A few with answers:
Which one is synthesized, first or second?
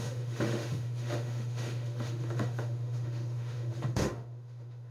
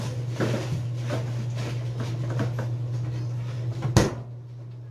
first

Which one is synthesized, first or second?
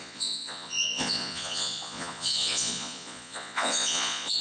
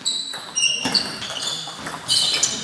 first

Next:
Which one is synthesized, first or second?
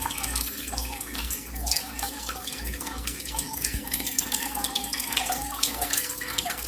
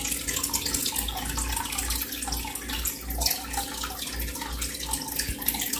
first